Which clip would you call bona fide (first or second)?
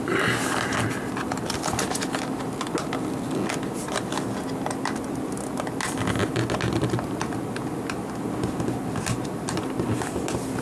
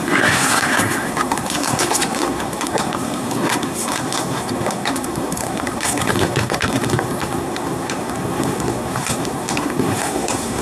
first